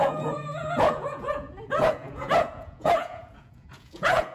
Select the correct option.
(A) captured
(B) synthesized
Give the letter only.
B